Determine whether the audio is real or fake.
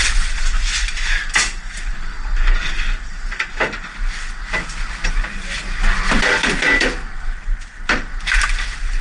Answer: real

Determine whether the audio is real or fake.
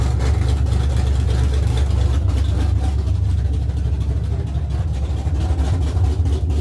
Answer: real